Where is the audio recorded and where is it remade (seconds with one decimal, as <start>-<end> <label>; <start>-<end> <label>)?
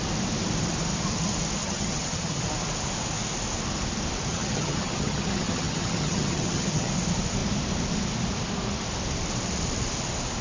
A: 0.0-1.6 recorded; 1.6-2.4 remade; 2.4-4.3 recorded; 4.3-6.9 remade; 6.9-10.4 recorded